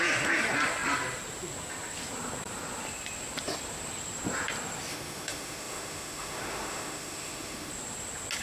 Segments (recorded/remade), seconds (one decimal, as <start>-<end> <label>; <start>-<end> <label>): 0.0-4.9 recorded; 4.9-7.7 remade; 7.7-8.4 recorded

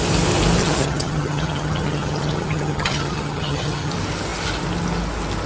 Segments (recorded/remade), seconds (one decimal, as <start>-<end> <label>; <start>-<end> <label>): 0.0-0.6 recorded; 0.6-3.9 remade; 3.9-5.5 recorded

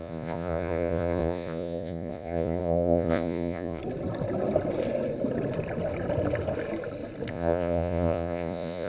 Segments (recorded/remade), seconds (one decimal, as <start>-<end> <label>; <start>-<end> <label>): 0.0-3.8 remade; 3.8-7.3 recorded; 7.3-8.9 remade

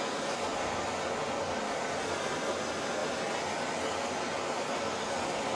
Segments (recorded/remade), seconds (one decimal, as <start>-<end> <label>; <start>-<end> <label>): 0.0-5.6 recorded

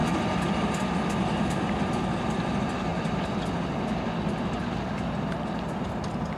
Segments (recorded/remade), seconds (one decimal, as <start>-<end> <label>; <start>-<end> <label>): 0.0-2.9 recorded; 2.9-3.7 remade; 3.7-6.4 recorded